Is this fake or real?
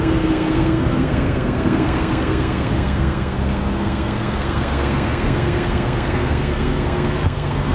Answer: fake